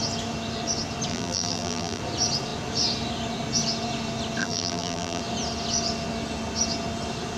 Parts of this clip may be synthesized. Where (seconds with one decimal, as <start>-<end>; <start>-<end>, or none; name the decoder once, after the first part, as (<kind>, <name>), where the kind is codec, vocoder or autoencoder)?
1.1-2.0 (vocoder, BigVGAN v2); 4.4-5.2